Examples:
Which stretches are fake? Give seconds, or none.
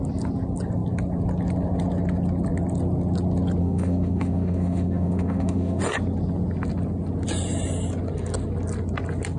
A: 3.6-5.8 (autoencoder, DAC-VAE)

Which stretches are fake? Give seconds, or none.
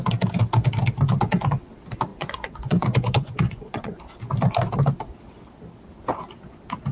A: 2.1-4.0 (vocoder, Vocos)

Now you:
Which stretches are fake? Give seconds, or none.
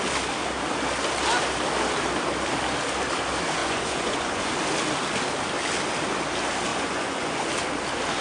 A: 3.6-4.5 (vocoder, Vocos); 6.7-7.5